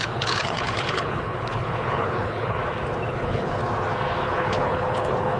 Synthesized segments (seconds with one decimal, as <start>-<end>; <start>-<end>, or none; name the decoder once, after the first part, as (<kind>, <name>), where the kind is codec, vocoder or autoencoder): 0.0-2.6 (codec, HILCodec); 3.1-3.6; 4.2-5.4